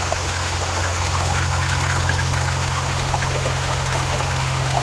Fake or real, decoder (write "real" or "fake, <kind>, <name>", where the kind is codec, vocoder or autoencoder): fake, autoencoder, DAC-VAE